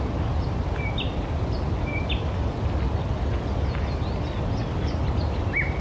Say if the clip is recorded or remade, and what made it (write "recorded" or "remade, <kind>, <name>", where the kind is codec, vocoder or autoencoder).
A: recorded